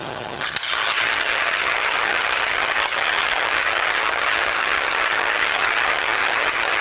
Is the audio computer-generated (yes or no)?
yes